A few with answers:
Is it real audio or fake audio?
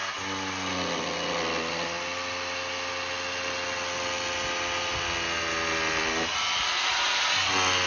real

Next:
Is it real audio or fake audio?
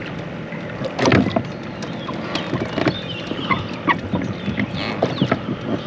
real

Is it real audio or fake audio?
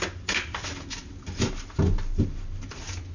real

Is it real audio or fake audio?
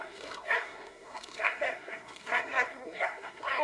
fake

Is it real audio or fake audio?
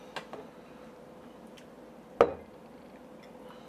real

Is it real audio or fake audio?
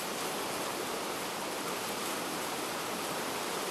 fake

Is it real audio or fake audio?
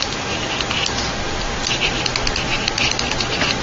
real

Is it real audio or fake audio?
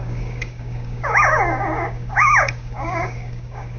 fake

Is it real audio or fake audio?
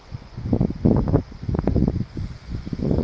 fake